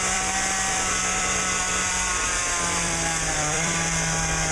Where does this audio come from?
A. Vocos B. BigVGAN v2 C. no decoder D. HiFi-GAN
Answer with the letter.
B